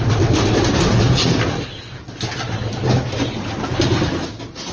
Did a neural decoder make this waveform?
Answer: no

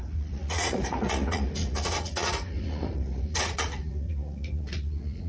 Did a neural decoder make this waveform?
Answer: yes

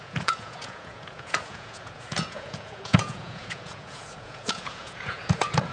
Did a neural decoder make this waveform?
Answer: yes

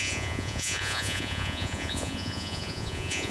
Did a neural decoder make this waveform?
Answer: yes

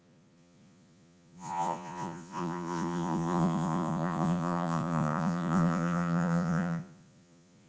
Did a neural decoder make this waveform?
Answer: yes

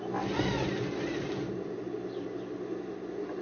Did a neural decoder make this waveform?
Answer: no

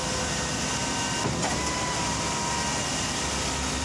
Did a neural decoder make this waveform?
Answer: no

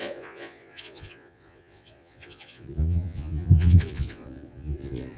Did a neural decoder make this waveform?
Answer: yes